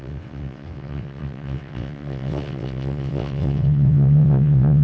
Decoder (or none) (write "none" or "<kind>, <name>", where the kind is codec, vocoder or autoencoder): vocoder, WaveNeXt